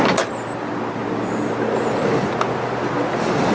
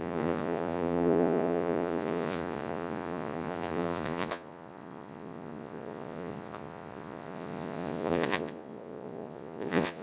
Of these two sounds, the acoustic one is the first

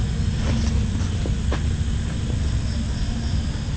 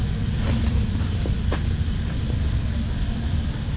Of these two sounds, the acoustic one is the first